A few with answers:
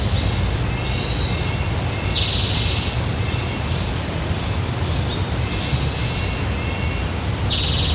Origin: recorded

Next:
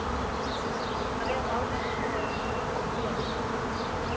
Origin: recorded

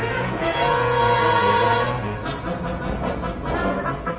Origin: remade